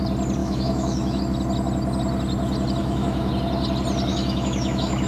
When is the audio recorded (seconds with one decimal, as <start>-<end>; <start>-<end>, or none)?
0.0-0.4; 1.2-2.8; 3.3-4.1